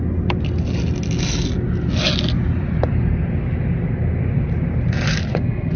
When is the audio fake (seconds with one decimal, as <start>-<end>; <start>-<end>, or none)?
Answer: 5.2-5.8